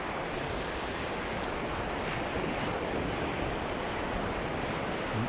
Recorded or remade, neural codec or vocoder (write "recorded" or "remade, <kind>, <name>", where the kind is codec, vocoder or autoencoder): recorded